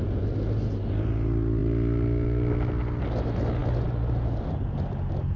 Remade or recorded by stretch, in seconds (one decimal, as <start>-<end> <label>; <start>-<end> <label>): 0.0-5.4 recorded

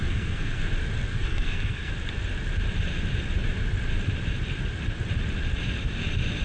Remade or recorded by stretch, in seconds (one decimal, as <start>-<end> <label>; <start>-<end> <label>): 0.0-0.7 remade; 0.7-1.1 recorded; 1.1-1.9 remade; 1.9-6.4 recorded

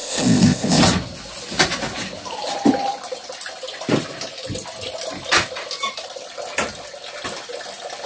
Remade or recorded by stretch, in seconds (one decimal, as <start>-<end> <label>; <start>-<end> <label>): 0.0-0.8 remade; 0.8-8.1 recorded

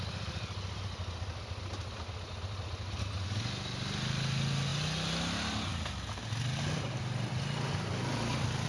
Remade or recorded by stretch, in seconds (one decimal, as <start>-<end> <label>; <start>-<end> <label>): 0.0-8.7 recorded

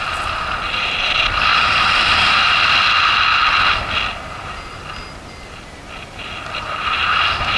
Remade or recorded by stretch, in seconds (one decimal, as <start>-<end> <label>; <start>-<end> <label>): 0.0-7.6 recorded

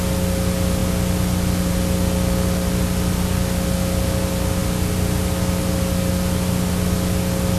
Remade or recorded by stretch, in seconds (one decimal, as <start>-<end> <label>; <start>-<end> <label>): 0.0-7.6 recorded

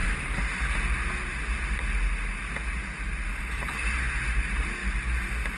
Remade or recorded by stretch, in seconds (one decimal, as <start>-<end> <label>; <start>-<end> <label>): 0.0-5.6 recorded